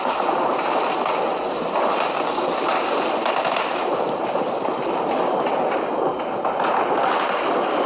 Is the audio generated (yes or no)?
no